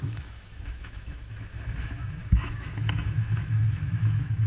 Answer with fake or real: fake